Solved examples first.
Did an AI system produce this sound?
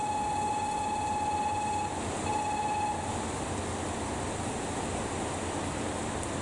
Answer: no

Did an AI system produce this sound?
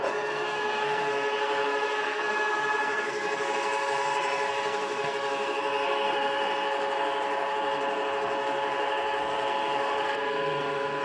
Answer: yes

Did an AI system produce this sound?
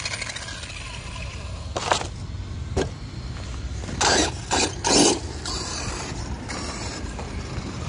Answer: no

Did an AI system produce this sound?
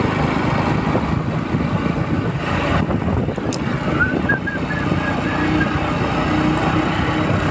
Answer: no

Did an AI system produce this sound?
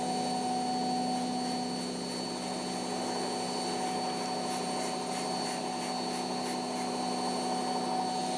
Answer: no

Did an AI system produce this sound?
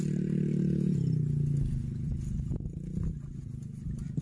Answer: no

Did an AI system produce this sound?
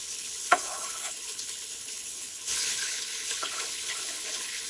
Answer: yes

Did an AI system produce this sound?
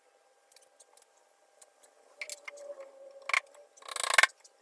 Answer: no